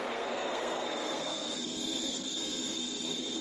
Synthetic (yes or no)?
yes